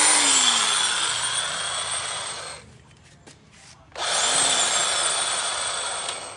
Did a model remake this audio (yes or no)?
no